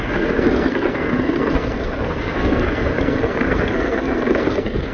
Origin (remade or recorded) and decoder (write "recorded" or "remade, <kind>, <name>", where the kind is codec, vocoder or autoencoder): remade, codec, SNAC